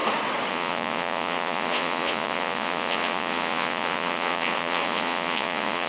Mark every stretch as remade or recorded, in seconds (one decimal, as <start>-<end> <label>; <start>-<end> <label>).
0.0-0.5 recorded; 0.5-5.9 remade